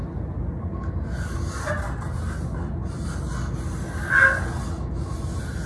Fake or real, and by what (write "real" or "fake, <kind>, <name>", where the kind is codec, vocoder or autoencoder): real